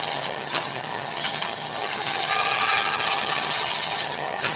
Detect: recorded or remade remade